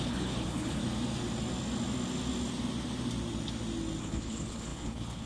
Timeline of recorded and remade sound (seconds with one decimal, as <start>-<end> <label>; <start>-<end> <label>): 0.0-0.8 remade; 0.8-4.0 recorded; 4.0-5.3 remade